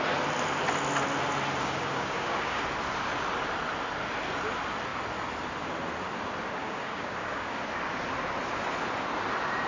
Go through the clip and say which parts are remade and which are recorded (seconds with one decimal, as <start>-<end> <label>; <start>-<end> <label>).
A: 0.0-1.6 recorded; 1.6-2.6 remade; 2.6-6.6 recorded; 6.6-7.6 remade; 7.6-9.7 recorded